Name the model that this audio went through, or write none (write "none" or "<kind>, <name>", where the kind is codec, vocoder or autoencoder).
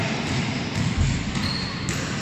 none